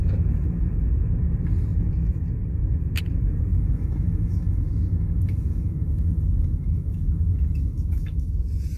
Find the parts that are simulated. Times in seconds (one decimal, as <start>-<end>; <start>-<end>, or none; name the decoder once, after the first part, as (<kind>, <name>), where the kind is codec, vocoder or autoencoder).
3.5-8.3 (autoencoder, DAC-VAE)

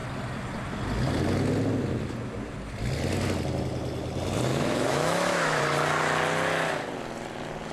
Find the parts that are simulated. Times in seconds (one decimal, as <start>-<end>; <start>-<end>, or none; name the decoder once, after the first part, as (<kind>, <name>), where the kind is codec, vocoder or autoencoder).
4.5-5.6 (autoencoder, DAC-VAE)

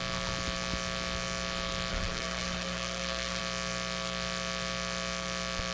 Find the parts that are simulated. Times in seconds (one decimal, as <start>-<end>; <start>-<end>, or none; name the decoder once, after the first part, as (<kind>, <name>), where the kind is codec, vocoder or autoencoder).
1.9-3.4 (codec, SNAC)